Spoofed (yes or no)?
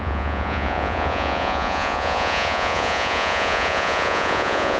yes